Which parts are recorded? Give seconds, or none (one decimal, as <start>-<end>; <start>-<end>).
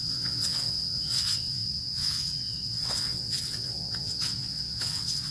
none